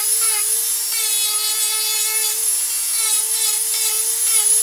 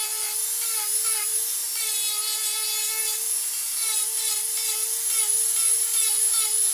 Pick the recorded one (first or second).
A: first